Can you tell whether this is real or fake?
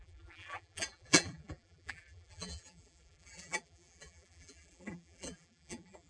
fake